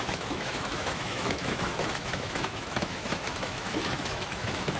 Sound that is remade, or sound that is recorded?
remade